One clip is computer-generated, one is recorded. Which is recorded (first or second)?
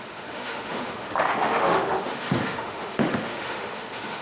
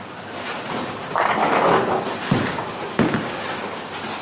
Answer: second